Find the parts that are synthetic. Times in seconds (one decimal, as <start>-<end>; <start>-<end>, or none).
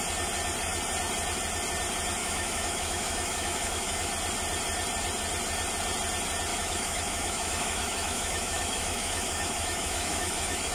2.2-4.1; 6.5-10.7